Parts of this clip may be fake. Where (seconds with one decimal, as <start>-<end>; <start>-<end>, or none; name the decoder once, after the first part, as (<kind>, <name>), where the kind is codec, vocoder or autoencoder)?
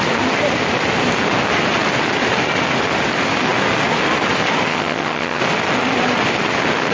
4.7-5.4 (vocoder, HiFi-GAN)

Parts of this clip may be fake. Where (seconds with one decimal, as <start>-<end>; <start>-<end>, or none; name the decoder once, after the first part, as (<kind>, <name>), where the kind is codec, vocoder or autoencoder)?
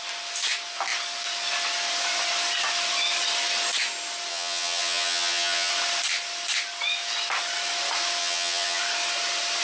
4.3-5.7 (vocoder, HiFi-GAN); 8.2-8.8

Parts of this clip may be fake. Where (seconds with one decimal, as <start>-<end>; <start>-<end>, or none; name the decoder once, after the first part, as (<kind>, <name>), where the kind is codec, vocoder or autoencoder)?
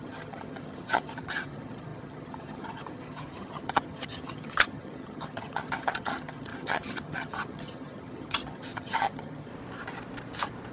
0.0-9.5 (vocoder, HiFi-GAN)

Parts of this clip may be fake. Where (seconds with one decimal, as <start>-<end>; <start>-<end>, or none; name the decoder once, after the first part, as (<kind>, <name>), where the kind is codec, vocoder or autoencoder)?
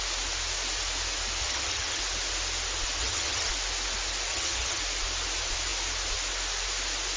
1.4-2.0 (vocoder, HiFi-GAN); 3.0-3.5; 4.3-4.8